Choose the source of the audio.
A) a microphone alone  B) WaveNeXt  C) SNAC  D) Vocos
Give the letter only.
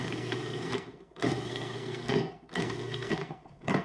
C